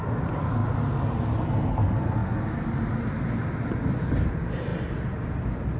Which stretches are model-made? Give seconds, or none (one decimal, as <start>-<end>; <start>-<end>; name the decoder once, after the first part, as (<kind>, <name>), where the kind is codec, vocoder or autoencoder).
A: none